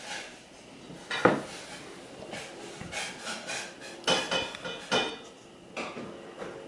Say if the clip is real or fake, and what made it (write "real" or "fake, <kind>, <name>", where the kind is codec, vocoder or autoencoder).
real